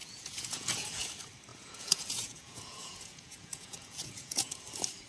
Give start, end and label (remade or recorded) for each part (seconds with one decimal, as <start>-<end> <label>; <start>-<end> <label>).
0.0-1.0 remade; 1.0-1.5 recorded; 1.5-4.6 remade; 4.6-5.1 recorded